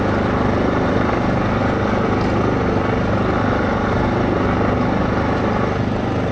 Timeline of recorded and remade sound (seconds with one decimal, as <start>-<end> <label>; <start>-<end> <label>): 0.0-6.3 recorded